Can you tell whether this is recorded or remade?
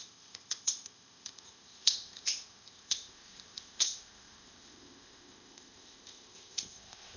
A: remade